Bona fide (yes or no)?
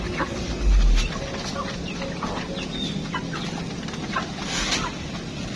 yes